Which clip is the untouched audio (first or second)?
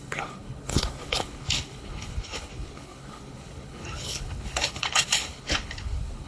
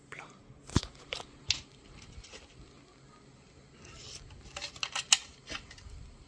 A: second